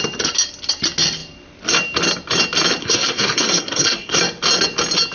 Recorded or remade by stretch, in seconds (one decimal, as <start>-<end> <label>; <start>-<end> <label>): 0.0-2.8 recorded; 2.8-4.2 remade; 4.2-5.1 recorded